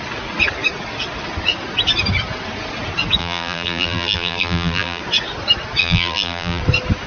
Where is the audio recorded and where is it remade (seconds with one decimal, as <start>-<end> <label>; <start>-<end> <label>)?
0.0-3.2 recorded; 3.2-5.0 remade; 5.0-5.8 recorded; 5.8-6.6 remade; 6.6-7.1 recorded